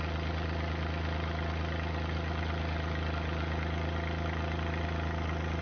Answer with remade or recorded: recorded